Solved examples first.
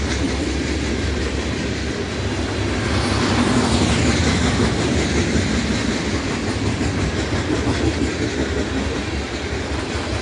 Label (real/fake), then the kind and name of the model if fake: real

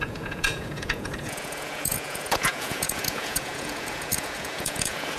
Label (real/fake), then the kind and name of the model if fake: fake, vocoder, Vocos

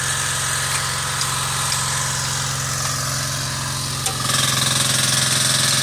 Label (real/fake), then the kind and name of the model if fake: real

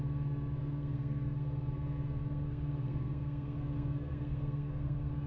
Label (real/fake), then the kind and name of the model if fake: fake, codec, SNAC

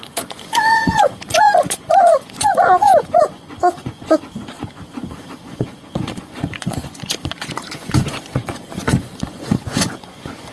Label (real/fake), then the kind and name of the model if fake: fake, vocoder, Vocos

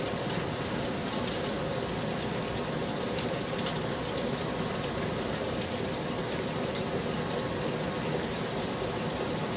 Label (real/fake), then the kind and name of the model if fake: real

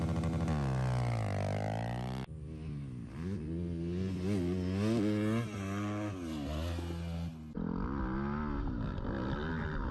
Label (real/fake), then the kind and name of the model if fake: real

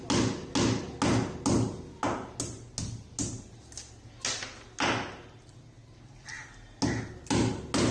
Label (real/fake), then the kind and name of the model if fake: real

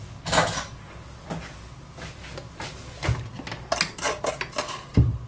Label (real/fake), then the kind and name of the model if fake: real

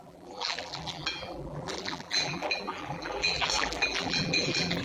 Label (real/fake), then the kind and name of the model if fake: fake, vocoder, BigVGAN v2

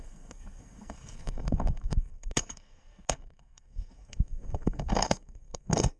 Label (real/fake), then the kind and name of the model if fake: fake, codec, SNAC